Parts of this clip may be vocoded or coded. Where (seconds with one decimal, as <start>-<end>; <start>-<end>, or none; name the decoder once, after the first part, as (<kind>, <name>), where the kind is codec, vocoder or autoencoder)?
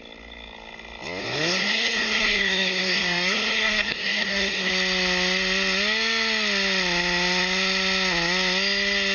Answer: 1.2-4.7 (codec, SNAC)